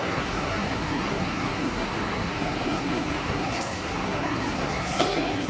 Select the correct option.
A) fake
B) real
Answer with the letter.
A